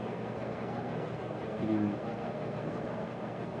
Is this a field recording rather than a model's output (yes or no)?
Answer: no